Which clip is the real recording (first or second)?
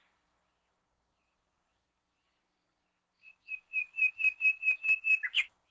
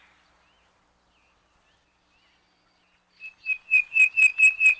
second